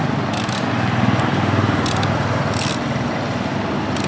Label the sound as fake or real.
real